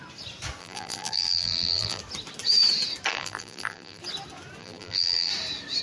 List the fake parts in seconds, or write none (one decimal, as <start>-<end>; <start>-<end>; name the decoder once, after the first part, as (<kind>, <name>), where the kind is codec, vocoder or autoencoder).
0.6-2.0 (vocoder, BigVGAN v2); 3.1-4.0; 4.6-5.3